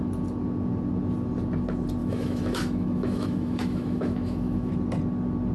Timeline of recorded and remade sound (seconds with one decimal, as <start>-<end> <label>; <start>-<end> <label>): 0.0-2.0 recorded; 2.0-4.7 remade; 4.7-5.5 recorded